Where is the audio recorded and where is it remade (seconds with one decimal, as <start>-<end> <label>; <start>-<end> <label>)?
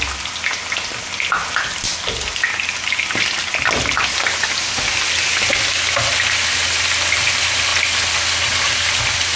0.0-9.4 recorded